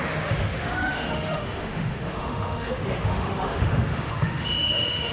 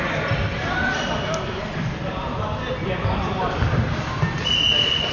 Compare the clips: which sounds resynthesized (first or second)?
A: first